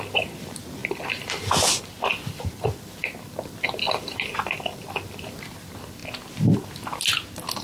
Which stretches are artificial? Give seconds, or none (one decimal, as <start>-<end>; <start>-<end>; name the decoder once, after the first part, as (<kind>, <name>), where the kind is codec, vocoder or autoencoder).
0.0-6.0 (vocoder, BigVGAN v2)